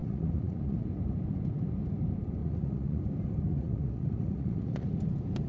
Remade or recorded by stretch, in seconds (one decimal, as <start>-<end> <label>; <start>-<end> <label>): 0.0-0.9 remade; 0.9-2.4 recorded; 2.4-3.0 remade; 3.0-3.5 recorded; 3.5-4.9 remade; 4.9-5.5 recorded